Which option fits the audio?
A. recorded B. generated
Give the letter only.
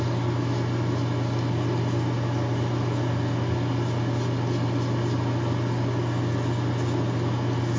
A